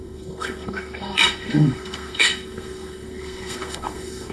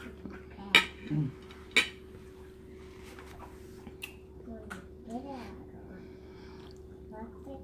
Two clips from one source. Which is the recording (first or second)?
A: second